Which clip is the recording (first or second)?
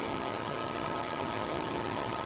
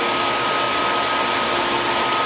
second